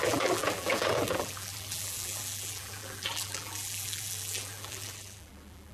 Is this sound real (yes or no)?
no